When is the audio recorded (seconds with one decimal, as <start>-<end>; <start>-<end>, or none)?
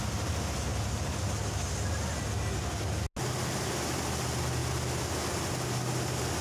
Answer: 0.0-6.4